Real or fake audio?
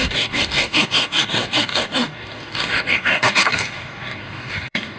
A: fake